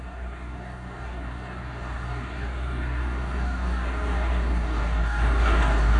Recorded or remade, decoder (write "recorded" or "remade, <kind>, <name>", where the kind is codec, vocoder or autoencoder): remade, codec, DAC